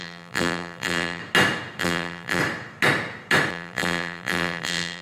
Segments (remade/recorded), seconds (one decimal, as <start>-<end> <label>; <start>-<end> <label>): 0.0-1.2 remade; 1.2-1.8 recorded; 1.8-2.4 remade; 2.4-3.5 recorded; 3.5-5.0 remade